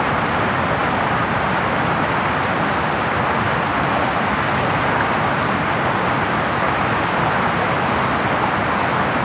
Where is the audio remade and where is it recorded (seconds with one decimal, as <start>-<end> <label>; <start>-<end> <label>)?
0.0-9.2 recorded